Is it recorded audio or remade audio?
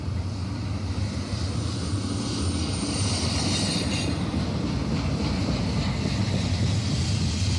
recorded